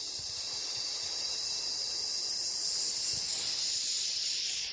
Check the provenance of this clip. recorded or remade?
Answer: recorded